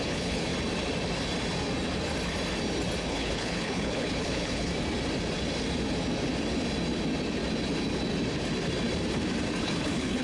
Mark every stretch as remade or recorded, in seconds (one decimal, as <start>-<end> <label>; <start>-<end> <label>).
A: 0.0-0.5 remade; 0.5-3.1 recorded; 3.1-4.7 remade; 4.7-9.6 recorded; 9.6-10.2 remade